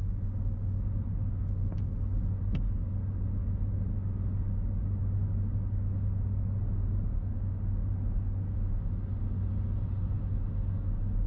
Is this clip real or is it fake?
real